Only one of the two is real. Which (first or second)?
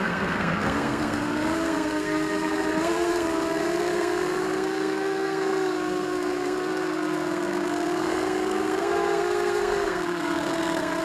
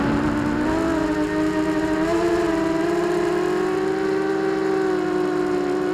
second